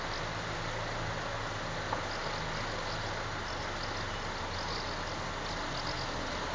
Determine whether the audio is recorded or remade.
recorded